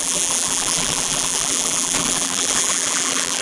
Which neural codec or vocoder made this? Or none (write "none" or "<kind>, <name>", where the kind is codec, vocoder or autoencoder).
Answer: vocoder, BigVGAN v2